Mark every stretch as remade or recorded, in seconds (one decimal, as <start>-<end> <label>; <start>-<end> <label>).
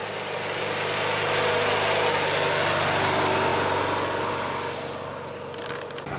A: 0.0-6.2 recorded